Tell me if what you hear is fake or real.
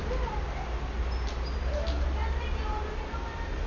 real